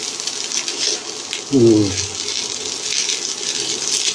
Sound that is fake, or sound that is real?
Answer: real